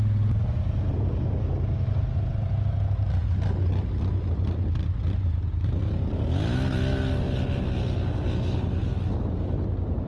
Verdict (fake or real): real